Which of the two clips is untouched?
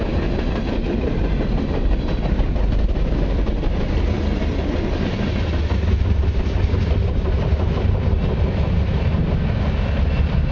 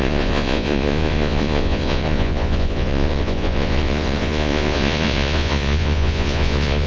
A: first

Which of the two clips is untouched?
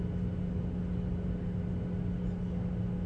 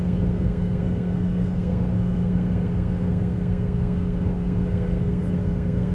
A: first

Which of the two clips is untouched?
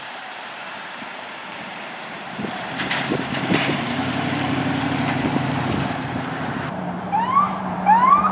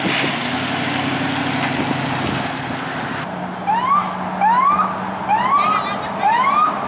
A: second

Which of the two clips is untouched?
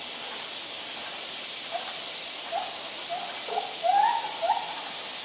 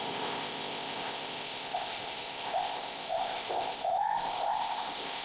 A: first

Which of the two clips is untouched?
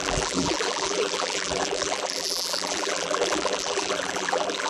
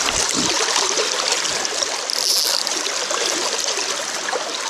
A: second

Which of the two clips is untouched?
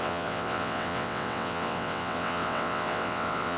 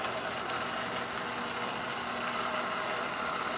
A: second